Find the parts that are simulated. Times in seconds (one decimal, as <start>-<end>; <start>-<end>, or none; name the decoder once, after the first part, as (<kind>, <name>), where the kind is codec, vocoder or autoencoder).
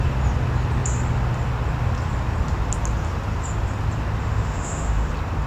4.2-5.1 (autoencoder, DAC-VAE)